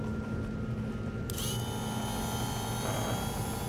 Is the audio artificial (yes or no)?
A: no